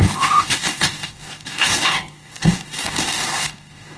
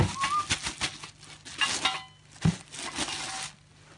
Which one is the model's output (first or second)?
first